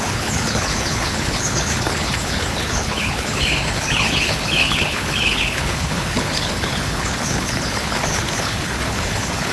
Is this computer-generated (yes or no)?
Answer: yes